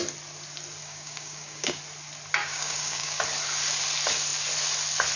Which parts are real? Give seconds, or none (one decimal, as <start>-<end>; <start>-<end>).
0.0-0.8; 1.8-2.4; 3.2-5.2

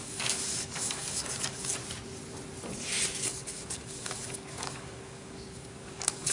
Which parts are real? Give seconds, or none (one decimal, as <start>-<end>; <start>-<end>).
1.7-3.2

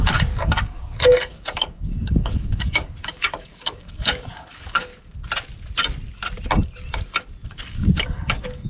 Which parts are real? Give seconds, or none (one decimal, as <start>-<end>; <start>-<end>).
4.9-7.5

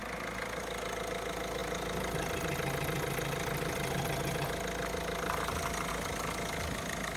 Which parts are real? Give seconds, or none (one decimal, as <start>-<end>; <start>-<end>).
0.0-7.2